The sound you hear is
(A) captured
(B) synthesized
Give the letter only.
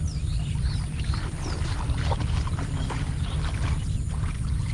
A